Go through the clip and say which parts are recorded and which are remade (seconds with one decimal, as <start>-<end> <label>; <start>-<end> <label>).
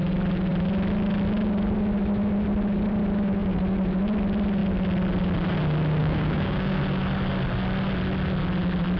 0.0-6.0 recorded; 6.0-6.8 remade; 6.8-9.0 recorded